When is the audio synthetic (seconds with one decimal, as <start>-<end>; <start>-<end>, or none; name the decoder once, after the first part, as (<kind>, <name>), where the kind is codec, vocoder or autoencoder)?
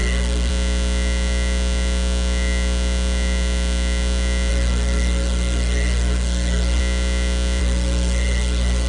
0.0-0.5 (codec, SNAC); 4.5-6.8; 7.6-8.9